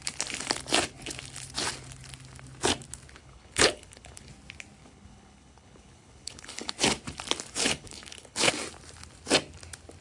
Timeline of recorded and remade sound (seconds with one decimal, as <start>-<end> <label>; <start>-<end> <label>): 0.0-3.2 recorded; 3.2-4.3 remade; 4.3-4.8 recorded; 4.8-6.7 remade; 6.7-7.6 recorded; 7.6-8.5 remade; 8.5-10.0 recorded